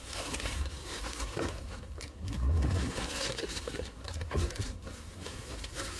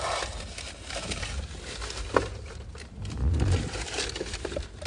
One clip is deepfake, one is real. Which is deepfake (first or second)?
first